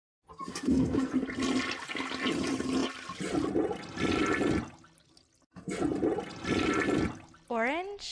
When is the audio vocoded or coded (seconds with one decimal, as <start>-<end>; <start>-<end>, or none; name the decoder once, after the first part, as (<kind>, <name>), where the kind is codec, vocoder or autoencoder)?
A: 0.5-1.1 (codec, SNAC)